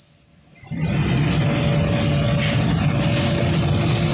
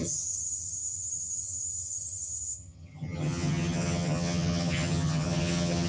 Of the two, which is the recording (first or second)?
first